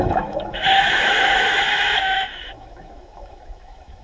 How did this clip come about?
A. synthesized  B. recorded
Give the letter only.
A